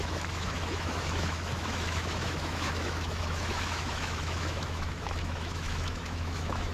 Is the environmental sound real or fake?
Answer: fake